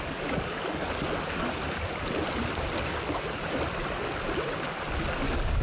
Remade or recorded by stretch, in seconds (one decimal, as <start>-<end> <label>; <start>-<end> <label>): 0.0-1.6 remade; 1.6-5.0 recorded; 5.0-5.6 remade